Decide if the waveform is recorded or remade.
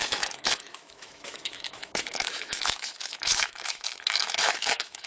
remade